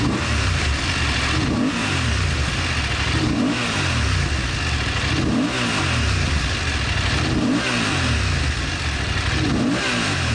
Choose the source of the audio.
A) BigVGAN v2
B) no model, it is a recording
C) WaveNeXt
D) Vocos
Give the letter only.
B